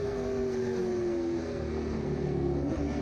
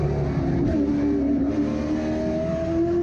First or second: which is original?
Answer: second